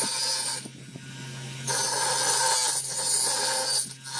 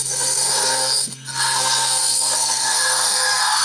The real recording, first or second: first